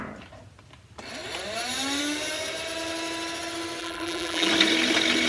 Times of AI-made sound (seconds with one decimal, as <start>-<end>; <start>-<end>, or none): 3.8-4.5